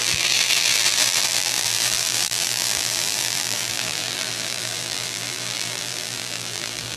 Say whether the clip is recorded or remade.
remade